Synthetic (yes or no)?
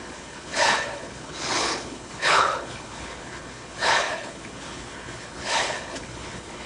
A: yes